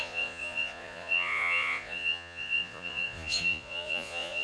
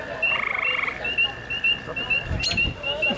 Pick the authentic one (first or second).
second